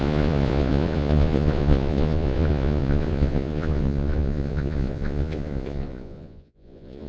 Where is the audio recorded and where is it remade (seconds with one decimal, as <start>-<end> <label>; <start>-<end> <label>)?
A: 0.0-7.1 remade